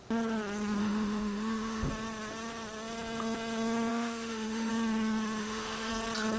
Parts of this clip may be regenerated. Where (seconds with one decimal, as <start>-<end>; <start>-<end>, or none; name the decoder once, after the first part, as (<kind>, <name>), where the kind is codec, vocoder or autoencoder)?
0.8-1.9 (autoencoder, DAC-VAE); 3.9-4.7; 5.4-5.9